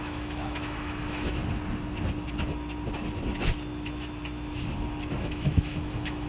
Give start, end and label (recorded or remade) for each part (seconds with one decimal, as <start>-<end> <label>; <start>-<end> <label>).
0.0-1.4 remade; 1.4-5.2 recorded; 5.2-6.3 remade